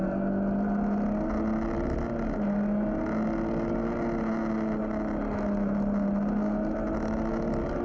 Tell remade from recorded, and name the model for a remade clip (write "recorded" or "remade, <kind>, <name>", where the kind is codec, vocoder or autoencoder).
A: recorded